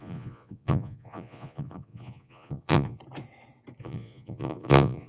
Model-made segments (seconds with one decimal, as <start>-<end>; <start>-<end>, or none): 0.0-3.0; 3.8-5.1